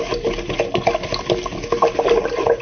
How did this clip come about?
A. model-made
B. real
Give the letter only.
B